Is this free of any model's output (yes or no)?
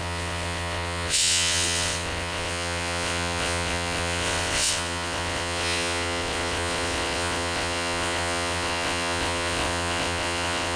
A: no